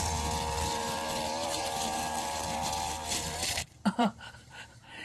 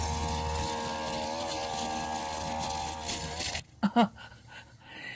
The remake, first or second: first